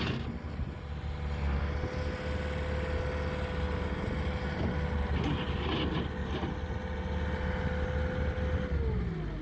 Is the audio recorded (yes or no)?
yes